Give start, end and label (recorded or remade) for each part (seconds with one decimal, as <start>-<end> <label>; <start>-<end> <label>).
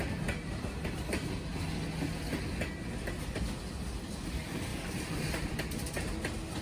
0.0-4.7 recorded; 4.7-5.5 remade; 5.5-6.6 recorded